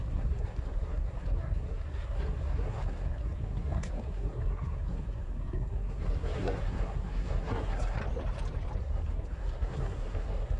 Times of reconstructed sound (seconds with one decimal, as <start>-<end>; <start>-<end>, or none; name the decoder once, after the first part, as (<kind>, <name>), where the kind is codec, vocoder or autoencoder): 0.0-8.0 (codec, SNAC); 8.8-10.6